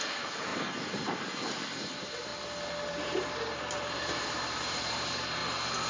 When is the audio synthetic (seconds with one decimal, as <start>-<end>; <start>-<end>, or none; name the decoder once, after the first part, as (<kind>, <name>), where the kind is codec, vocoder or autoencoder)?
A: 0.0-0.5 (vocoder, BigVGAN v2); 1.5-2.3; 2.9-5.4